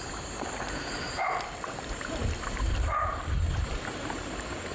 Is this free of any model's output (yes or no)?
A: no